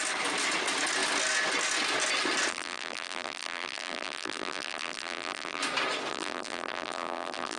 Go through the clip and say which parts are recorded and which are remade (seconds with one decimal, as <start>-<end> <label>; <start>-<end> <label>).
0.0-2.5 recorded; 2.5-5.6 remade; 5.6-6.1 recorded; 6.1-7.6 remade

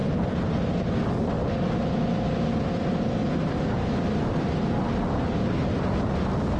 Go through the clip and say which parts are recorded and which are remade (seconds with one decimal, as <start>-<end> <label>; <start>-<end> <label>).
0.0-0.7 remade; 0.7-3.2 recorded; 3.2-4.8 remade; 4.8-6.6 recorded

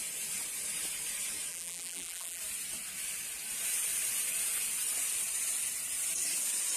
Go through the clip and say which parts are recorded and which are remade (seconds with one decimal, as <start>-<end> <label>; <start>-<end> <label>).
0.0-1.5 recorded; 1.5-2.4 remade; 2.4-6.8 recorded

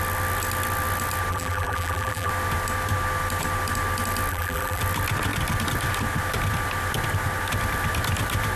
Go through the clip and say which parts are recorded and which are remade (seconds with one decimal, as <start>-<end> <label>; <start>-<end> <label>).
0.0-1.3 recorded; 1.3-2.3 remade; 2.3-4.3 recorded; 4.3-4.8 remade; 4.8-8.6 recorded